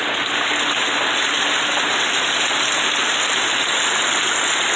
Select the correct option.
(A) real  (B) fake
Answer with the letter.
A